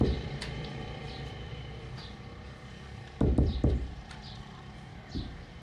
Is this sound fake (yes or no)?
yes